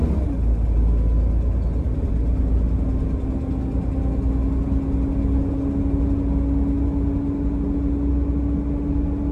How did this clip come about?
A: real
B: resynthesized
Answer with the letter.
A